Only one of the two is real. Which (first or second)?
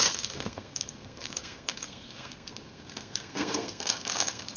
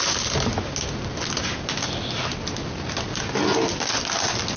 second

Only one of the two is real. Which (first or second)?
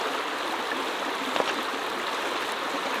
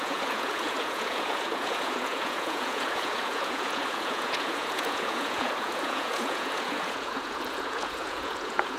first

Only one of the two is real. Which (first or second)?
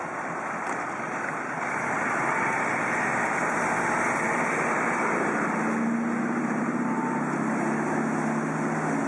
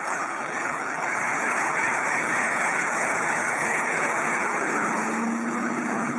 first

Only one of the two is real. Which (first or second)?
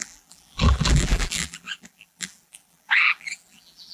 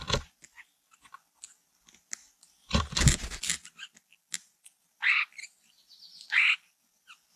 second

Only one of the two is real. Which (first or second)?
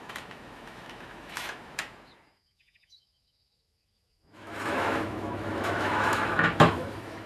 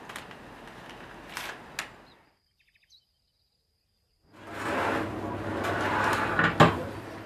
second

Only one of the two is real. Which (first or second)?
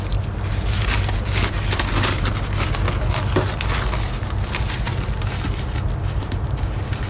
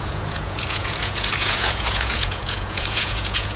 first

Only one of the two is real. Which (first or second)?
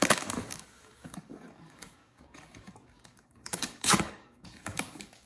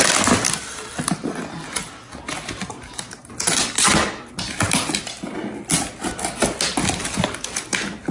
second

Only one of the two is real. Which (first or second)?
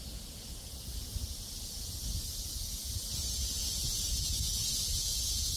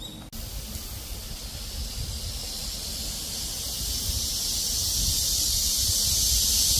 second